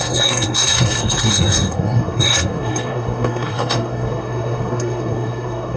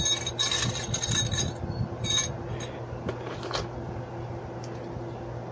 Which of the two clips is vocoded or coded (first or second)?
first